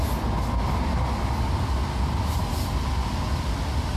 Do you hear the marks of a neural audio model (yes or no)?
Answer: no